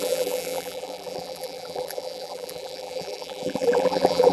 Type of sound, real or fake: fake